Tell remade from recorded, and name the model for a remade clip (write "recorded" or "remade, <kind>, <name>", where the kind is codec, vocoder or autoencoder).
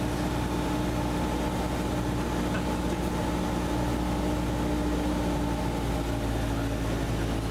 recorded